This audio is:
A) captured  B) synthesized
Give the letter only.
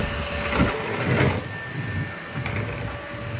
A